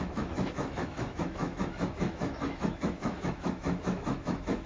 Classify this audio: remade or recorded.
remade